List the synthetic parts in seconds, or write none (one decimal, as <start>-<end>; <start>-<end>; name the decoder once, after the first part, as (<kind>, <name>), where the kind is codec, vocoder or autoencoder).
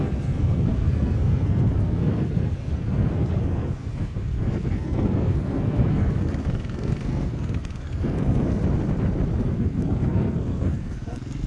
0.0-8.6 (codec, SNAC); 9.4-11.5